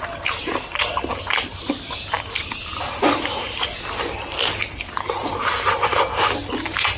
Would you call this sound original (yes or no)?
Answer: yes